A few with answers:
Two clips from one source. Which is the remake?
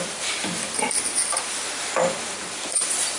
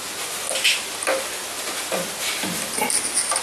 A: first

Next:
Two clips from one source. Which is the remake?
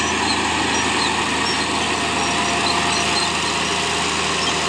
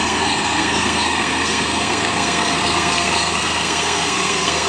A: second